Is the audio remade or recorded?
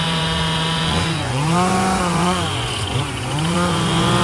remade